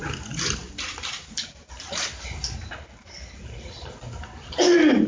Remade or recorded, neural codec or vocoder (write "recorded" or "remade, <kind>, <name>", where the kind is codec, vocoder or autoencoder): recorded